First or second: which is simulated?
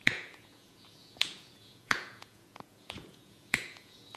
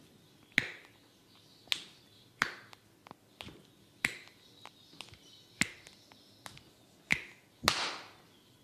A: first